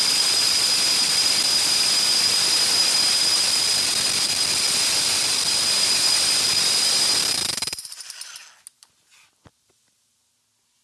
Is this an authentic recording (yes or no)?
yes